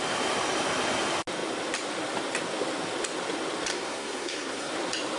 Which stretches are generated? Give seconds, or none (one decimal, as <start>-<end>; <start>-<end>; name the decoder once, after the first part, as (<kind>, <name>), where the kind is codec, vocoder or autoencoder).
3.7-4.7 (codec, SNAC)